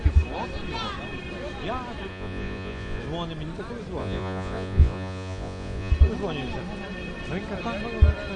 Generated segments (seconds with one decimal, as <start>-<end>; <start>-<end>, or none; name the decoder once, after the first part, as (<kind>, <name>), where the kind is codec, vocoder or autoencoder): 2.1-3.0 (vocoder, Vocos); 4.0-5.9